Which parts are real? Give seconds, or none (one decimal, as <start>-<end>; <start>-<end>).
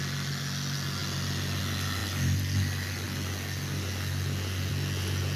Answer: 0.0-5.4